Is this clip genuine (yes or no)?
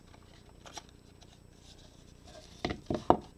yes